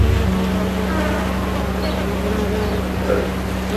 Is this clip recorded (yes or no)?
yes